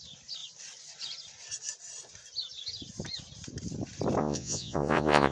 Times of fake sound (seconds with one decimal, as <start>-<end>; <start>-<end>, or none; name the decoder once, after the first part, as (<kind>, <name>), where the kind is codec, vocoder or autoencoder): 4.2-5.3 (vocoder, Vocos)